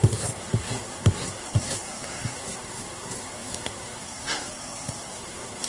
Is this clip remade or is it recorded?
remade